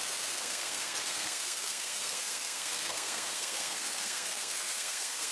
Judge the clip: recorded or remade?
remade